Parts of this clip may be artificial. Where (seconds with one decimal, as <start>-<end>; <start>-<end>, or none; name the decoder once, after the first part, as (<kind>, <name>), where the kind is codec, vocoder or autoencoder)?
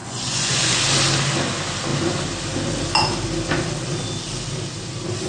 0.0-0.8 (vocoder, Vocos)